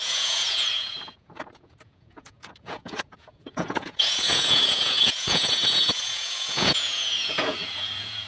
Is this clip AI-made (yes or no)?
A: yes